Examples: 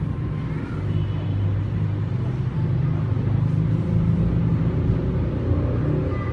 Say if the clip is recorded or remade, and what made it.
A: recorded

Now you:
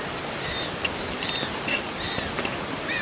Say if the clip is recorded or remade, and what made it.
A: recorded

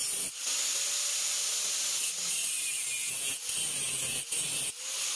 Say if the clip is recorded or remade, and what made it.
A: recorded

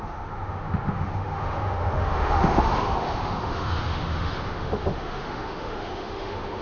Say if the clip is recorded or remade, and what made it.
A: remade, autoencoder, DAC-VAE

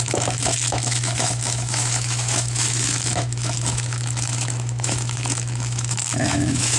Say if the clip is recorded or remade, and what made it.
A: remade, autoencoder, DAC-VAE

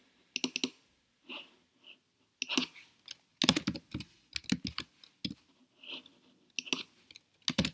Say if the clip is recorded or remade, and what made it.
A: recorded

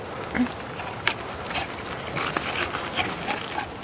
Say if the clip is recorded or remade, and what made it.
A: recorded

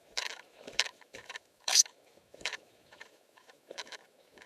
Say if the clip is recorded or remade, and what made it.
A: remade, autoencoder, DAC-VAE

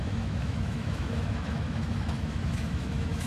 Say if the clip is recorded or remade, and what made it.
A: remade, autoencoder, DAC-VAE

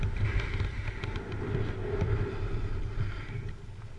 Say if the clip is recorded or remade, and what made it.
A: recorded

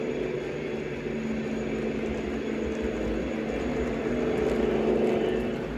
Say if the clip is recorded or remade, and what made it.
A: recorded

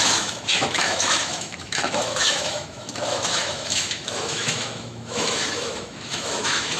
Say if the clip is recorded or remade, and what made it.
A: remade, autoencoder, DAC-VAE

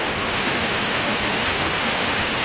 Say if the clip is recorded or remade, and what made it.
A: remade, autoencoder, DAC-VAE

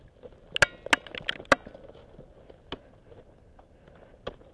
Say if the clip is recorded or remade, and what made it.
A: recorded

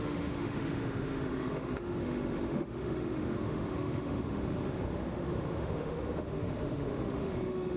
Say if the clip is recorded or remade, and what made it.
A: remade, autoencoder, DAC-VAE